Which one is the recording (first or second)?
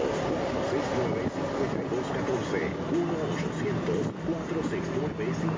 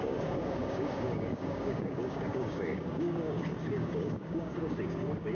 first